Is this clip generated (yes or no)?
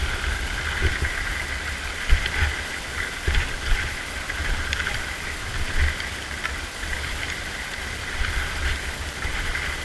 no